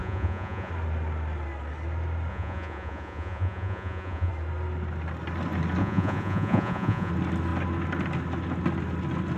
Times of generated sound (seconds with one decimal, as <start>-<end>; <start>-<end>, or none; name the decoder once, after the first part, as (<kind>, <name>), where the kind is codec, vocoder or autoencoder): 0.0-0.7 (vocoder, Vocos); 2.3-4.3; 5.8-7.1